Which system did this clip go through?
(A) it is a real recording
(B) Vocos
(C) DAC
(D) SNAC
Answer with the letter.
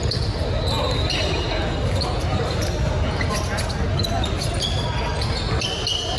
A